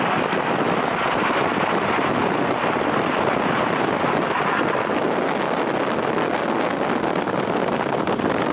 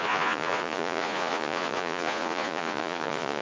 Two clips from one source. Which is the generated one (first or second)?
second